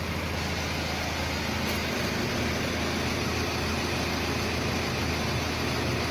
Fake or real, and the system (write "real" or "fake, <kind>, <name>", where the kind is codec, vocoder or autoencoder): real